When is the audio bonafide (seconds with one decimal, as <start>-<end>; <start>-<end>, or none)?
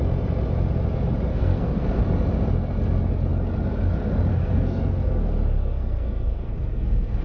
0.0-1.3; 2.0-4.3